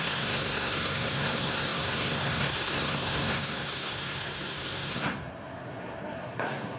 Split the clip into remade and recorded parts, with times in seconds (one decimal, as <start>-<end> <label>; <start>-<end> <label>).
0.0-6.8 remade